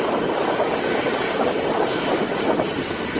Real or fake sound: real